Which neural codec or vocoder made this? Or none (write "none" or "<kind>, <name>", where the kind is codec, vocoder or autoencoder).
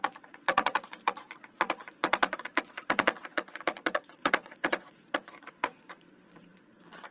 vocoder, Vocos